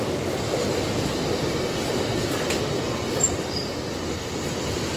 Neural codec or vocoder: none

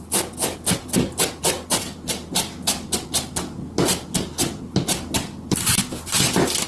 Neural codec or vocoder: vocoder, BigVGAN v2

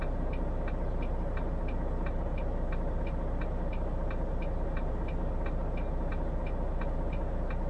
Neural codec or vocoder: none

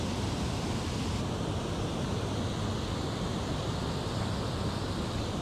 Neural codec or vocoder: none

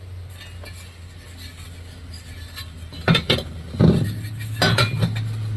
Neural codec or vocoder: none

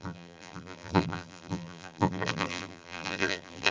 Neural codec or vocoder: vocoder, BigVGAN v2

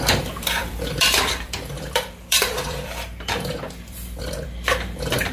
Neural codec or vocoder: vocoder, BigVGAN v2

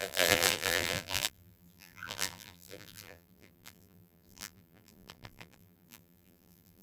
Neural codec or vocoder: vocoder, BigVGAN v2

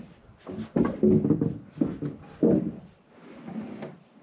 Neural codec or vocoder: none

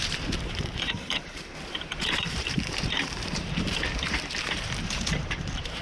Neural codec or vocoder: vocoder, BigVGAN v2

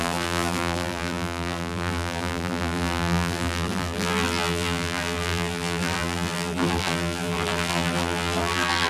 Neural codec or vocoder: vocoder, BigVGAN v2